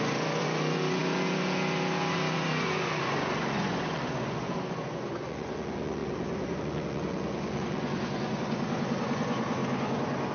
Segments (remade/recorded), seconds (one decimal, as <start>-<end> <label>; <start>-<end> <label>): 0.0-10.3 remade